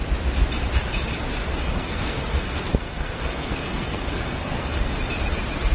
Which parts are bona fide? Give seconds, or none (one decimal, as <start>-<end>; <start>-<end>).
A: 0.0-1.5; 4.9-5.7